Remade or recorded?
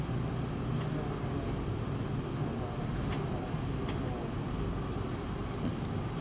recorded